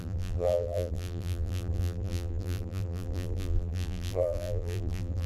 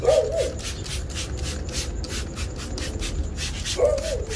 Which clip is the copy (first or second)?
first